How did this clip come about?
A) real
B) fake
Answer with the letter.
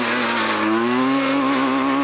A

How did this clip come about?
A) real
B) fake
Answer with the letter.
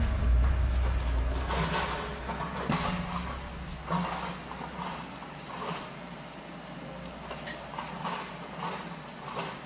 A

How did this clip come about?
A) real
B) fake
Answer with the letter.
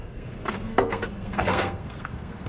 B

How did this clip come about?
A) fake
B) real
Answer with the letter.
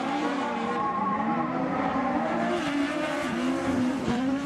A